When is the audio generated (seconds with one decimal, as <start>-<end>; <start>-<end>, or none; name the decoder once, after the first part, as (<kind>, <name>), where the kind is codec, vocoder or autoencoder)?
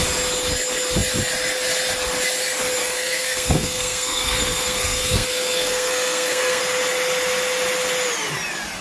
2.8-6.6 (codec, SNAC)